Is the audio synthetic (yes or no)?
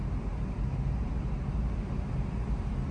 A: no